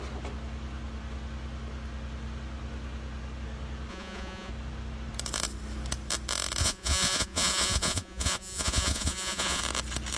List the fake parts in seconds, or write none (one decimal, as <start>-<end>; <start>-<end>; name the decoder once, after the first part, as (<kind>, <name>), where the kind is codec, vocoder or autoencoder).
3.9-4.5 (vocoder, Vocos); 6.6-9.6